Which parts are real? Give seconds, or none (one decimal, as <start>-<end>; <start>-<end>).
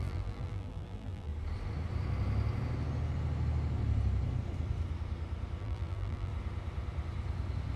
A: 1.3-5.6; 6.3-7.8